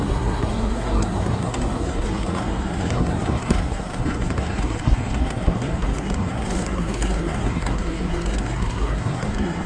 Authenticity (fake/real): fake